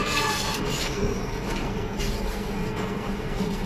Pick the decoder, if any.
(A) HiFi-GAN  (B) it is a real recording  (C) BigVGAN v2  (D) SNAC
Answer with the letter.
D